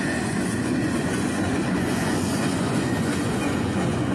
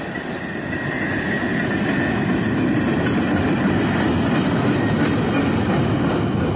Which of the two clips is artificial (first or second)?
first